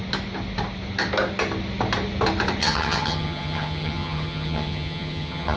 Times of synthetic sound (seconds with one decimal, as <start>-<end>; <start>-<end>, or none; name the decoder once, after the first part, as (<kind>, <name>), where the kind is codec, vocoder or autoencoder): 2.6-5.6 (vocoder, HiFi-GAN)